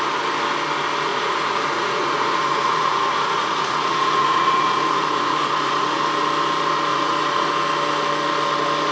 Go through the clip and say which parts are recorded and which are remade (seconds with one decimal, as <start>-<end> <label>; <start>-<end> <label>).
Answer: 0.0-1.1 recorded; 1.1-6.0 remade; 6.0-6.9 recorded; 6.9-7.5 remade; 7.5-8.9 recorded